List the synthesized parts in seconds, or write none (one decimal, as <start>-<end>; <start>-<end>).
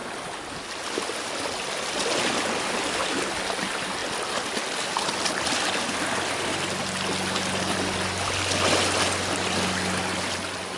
none